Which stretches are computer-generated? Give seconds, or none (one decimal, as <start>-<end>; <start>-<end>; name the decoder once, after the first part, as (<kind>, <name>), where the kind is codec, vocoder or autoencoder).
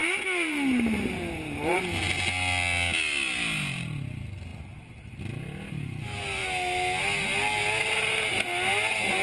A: 0.0-1.8 (vocoder, BigVGAN v2)